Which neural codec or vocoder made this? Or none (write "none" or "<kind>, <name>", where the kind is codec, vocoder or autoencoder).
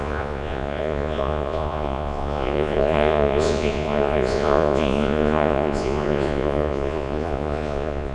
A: vocoder, Vocos